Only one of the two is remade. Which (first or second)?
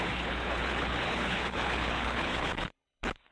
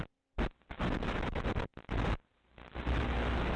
first